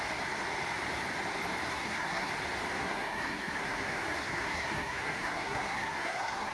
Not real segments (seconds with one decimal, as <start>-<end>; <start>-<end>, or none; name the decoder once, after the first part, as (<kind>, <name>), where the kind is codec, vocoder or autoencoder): 1.7-2.3 (codec, SNAC); 2.8-6.5